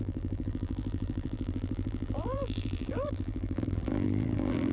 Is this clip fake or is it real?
fake